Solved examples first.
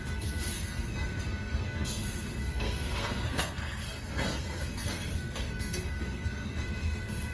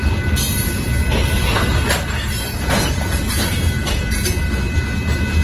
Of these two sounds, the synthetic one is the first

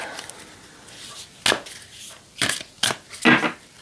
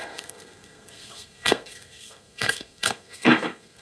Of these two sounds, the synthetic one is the second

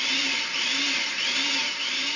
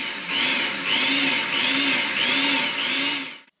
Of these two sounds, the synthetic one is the first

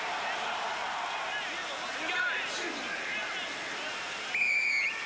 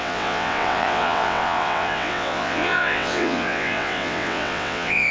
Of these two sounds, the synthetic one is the second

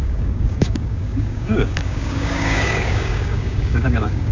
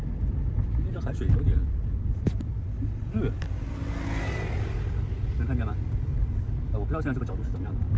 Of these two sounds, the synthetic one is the first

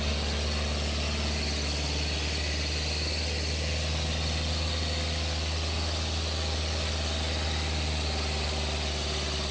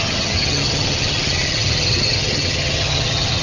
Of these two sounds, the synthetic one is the second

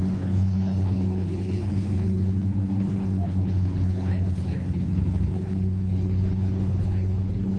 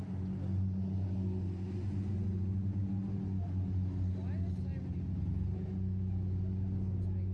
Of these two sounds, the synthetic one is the first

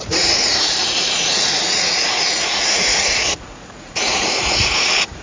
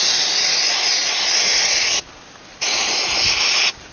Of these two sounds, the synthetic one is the first